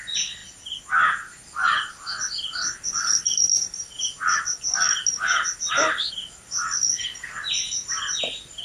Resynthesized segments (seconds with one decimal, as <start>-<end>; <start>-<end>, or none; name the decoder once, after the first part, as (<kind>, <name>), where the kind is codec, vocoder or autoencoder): none